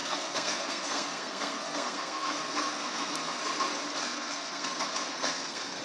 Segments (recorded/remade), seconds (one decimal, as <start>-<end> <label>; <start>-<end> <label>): 0.0-3.4 remade; 3.4-4.0 recorded; 4.0-5.8 remade